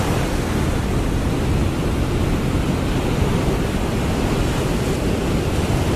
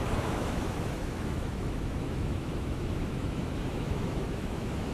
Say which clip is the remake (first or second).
second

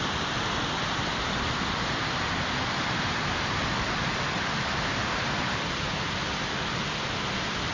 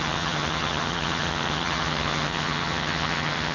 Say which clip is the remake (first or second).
second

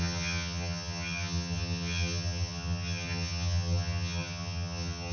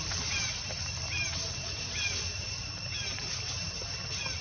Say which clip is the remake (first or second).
first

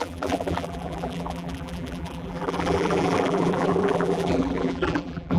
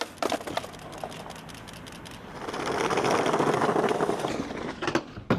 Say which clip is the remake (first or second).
first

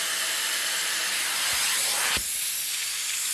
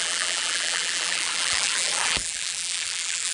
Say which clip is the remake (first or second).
second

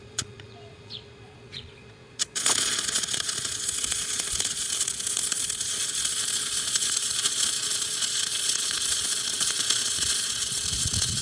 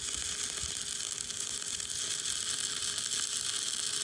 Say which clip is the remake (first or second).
first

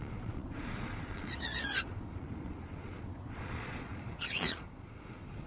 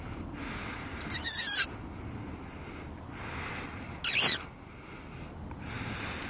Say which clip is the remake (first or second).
first